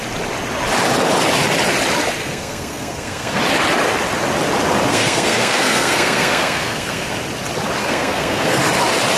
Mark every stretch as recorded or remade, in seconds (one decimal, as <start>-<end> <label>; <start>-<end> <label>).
0.0-2.2 recorded; 2.2-3.4 remade; 3.4-4.9 recorded; 4.9-7.1 remade; 7.1-7.8 recorded; 7.8-8.6 remade; 8.6-9.2 recorded